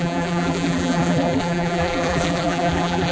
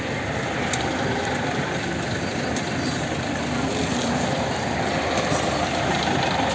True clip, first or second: second